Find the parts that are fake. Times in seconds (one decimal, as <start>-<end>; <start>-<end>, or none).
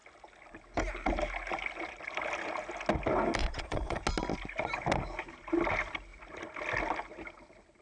3.4-4.0